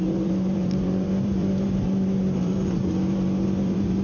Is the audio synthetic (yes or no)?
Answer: yes